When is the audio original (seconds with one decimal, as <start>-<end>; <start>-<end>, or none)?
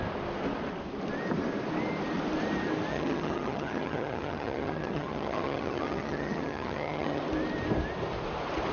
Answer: 0.0-2.9; 7.2-8.7